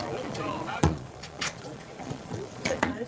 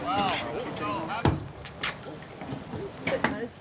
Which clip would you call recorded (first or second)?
second